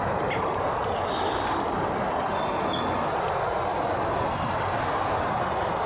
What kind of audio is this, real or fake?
real